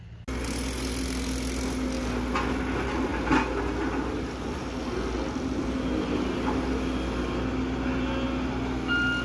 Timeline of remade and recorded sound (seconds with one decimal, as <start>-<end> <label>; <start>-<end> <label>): 0.0-9.2 recorded